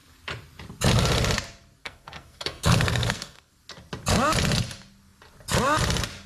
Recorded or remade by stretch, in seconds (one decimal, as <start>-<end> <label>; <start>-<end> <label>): 0.0-1.8 recorded; 1.8-3.5 remade; 3.5-6.3 recorded